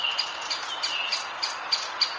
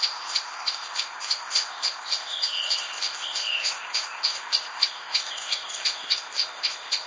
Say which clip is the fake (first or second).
second